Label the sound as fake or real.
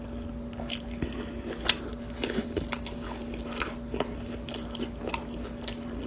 real